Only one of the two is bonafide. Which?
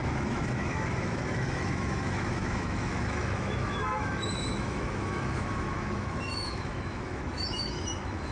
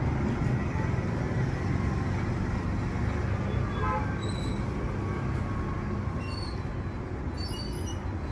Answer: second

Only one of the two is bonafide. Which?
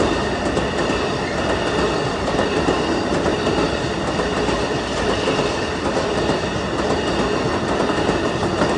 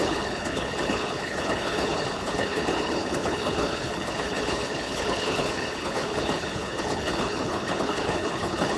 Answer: first